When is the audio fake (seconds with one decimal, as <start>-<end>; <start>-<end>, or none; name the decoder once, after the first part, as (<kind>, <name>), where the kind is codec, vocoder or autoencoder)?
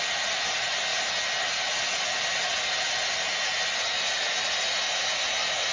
none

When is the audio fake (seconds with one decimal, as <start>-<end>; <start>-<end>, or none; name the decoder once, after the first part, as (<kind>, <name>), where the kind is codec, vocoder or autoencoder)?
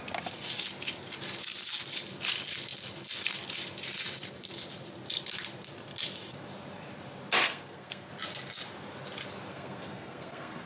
7.4-8.1 (codec, SNAC); 9.5-10.7